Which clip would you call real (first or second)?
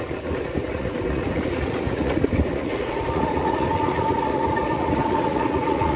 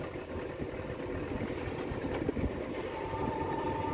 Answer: second